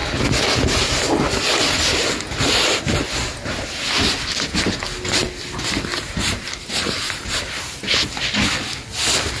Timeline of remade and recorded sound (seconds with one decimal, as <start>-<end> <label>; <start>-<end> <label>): 0.0-5.9 recorded; 5.9-6.5 remade; 6.5-9.4 recorded